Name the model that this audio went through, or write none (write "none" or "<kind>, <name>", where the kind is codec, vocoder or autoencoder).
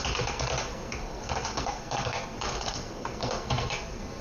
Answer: codec, SNAC